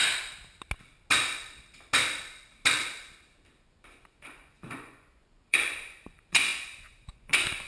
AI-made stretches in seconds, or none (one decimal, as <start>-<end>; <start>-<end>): 3.6-7.7